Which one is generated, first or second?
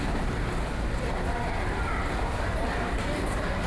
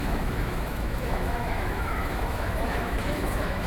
second